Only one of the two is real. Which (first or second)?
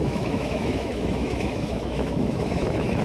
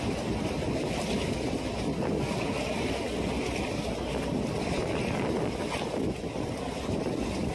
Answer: second